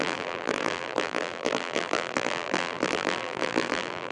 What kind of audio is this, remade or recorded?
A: remade